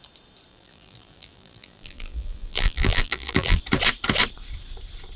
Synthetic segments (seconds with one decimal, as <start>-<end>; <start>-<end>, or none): 0.5-3.6